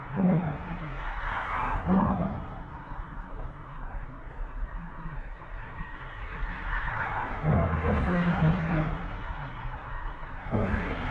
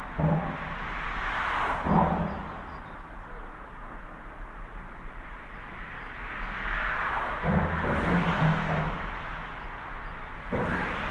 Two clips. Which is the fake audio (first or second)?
first